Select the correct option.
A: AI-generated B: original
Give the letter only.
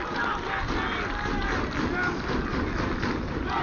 B